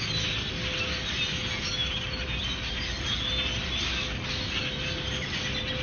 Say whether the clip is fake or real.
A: real